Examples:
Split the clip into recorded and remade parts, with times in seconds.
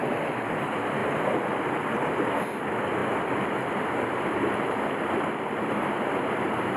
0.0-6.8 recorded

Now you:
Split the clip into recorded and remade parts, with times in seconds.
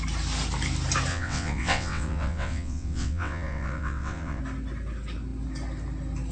0.0-1.1 recorded; 1.1-4.4 remade; 4.4-6.3 recorded